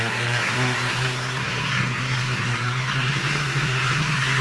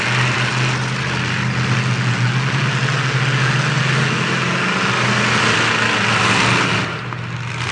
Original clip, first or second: second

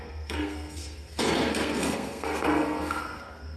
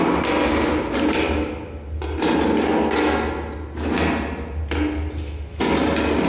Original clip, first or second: second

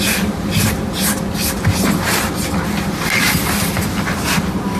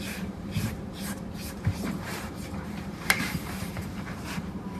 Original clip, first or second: first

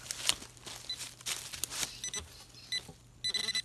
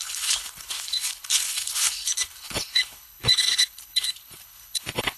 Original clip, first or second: first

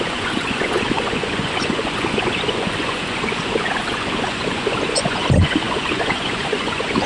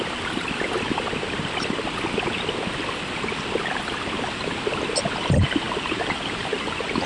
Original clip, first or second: second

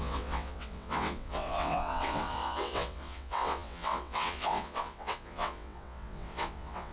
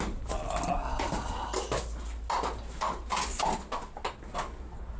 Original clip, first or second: second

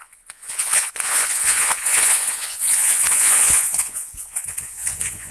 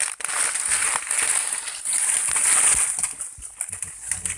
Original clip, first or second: second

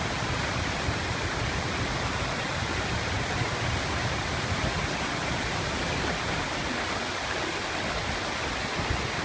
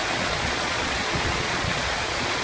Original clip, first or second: first